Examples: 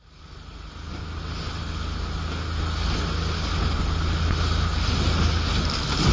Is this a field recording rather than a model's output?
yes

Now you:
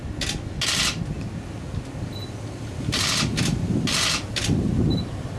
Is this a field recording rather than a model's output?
yes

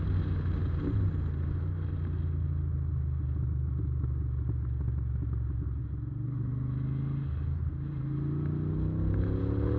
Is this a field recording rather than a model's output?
yes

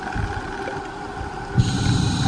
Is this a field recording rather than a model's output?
yes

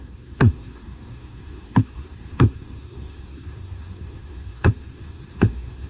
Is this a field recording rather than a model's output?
no